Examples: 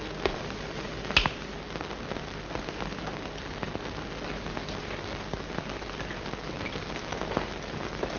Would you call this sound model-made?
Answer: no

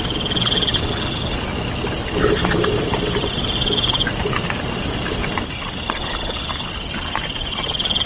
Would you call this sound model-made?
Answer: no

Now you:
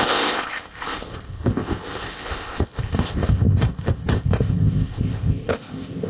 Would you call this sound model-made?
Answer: yes